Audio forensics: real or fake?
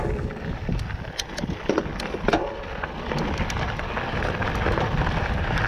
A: real